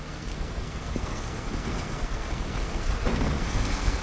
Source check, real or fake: fake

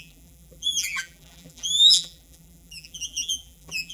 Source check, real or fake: fake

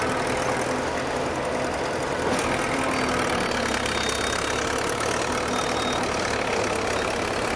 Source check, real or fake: real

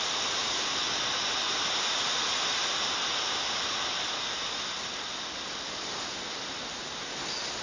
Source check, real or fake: real